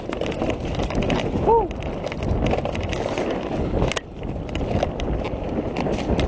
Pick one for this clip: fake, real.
real